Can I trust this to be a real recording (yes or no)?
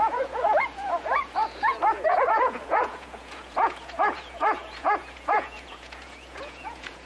no